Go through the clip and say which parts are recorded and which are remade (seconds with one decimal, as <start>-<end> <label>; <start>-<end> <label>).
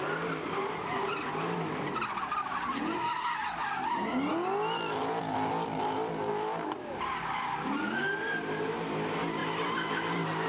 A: 0.0-10.5 recorded